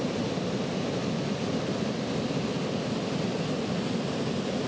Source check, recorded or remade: recorded